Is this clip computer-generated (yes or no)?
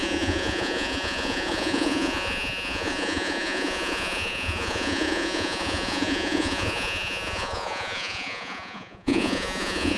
yes